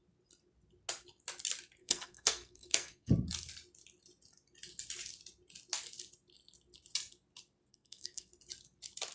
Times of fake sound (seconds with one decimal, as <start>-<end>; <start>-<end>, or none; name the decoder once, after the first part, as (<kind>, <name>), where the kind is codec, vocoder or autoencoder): 1.8-3.1 (codec, SNAC); 7.7-8.3